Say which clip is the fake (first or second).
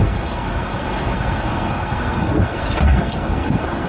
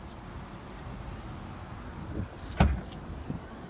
first